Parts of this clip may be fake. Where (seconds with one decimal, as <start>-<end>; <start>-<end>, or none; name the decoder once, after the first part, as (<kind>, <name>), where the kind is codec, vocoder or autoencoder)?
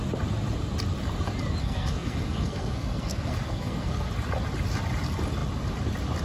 1.6-4.1 (codec, SNAC)